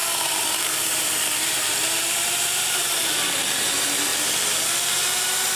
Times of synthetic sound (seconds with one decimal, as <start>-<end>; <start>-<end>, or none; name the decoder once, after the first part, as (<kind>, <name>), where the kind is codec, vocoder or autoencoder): 0.0-3.4 (vocoder, BigVGAN v2); 4.1-4.7